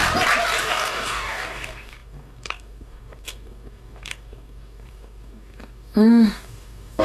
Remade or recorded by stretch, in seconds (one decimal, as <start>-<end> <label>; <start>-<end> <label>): 0.0-0.6 recorded; 0.6-7.0 remade